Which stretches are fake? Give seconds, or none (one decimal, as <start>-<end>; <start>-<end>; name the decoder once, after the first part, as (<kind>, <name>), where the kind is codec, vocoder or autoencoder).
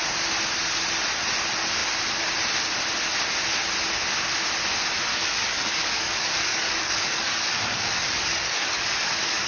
5.1-9.5 (codec, DAC)